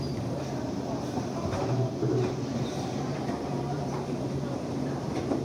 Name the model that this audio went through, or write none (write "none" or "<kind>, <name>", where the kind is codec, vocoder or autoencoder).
vocoder, BigVGAN v2